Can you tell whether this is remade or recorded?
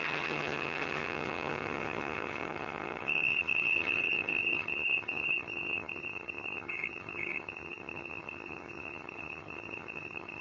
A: remade